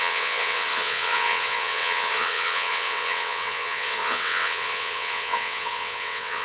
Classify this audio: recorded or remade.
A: remade